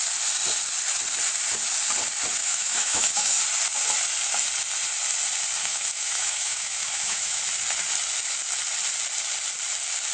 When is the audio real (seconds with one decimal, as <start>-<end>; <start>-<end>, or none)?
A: 0.0-2.4; 3.4-5.6; 7.4-10.1